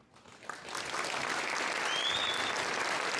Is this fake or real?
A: real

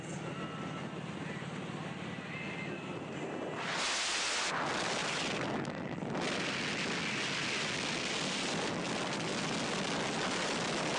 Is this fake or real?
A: real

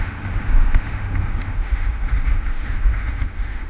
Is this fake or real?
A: fake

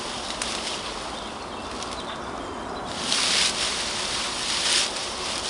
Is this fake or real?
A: real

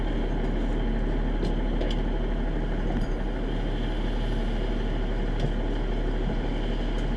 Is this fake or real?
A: real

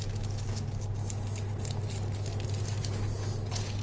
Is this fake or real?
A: real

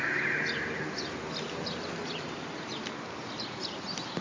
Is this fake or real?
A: real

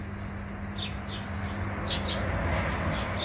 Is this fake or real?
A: real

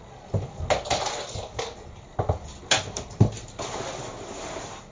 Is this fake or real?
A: real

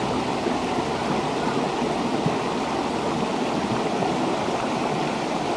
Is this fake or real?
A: real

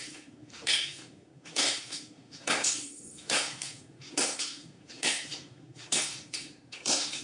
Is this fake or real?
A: fake